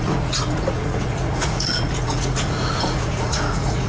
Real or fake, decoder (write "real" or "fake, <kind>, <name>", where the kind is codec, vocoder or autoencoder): fake, vocoder, Vocos